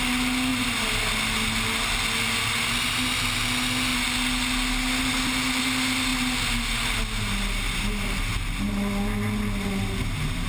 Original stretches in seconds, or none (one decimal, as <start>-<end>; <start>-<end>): 0.0-10.5